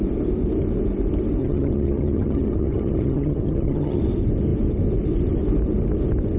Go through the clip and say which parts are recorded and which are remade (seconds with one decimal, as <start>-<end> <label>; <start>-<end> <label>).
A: 0.0-1.4 recorded; 1.4-4.0 remade; 4.0-6.4 recorded